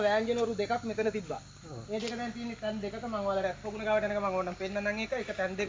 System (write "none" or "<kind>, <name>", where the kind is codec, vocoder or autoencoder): none